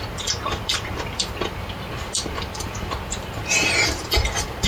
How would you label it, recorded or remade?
recorded